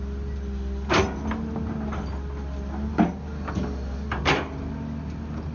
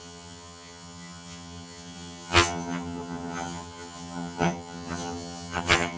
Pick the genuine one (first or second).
first